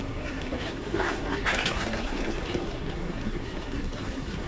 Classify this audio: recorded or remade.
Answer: remade